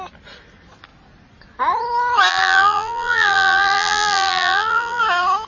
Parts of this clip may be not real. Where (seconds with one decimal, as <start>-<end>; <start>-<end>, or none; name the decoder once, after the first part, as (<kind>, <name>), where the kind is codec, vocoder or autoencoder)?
2.3-5.0 (vocoder, BigVGAN v2)